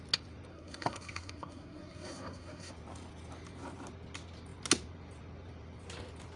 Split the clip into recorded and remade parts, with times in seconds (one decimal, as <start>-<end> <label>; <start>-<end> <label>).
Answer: 0.0-0.5 recorded; 0.5-2.7 remade; 2.7-6.4 recorded